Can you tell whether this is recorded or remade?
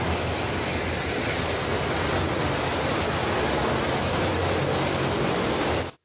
recorded